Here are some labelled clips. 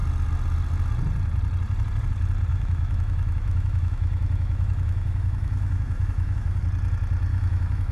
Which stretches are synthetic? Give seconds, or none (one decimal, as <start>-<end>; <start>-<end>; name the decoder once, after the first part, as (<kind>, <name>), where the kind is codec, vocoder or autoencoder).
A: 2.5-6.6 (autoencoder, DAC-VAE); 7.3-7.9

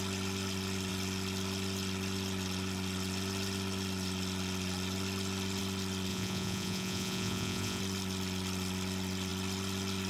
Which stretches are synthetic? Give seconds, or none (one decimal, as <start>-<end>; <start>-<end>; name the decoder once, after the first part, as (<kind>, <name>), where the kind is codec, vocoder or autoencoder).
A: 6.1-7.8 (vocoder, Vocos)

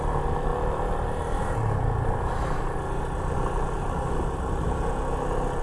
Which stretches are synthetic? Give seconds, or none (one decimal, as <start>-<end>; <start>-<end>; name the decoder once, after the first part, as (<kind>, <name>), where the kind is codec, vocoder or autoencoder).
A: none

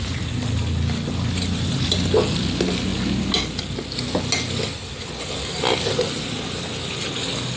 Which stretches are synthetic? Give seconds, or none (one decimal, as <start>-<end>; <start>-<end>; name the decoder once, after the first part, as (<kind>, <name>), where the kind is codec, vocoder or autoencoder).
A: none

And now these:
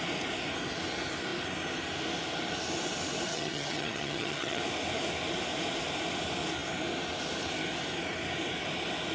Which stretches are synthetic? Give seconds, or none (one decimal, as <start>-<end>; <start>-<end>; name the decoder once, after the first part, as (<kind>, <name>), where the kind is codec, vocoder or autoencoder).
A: 3.3-4.6 (vocoder, HiFi-GAN)

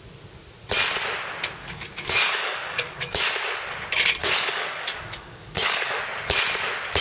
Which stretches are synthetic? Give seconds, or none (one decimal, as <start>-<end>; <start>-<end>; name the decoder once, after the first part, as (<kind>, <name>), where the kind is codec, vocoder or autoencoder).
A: 1.6-3.3 (codec, DAC); 4.2-6.0

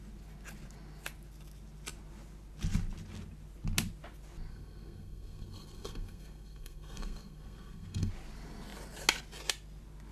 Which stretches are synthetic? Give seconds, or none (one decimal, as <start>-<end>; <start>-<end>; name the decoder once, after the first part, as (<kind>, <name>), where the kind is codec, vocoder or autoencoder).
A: 4.5-8.1 (codec, SNAC)